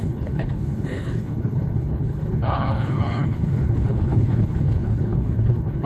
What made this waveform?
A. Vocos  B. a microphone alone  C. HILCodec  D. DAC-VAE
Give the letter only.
C